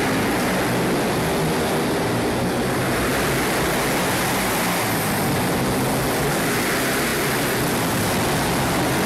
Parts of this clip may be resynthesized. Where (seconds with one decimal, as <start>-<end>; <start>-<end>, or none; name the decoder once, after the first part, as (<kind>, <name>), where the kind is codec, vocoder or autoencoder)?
none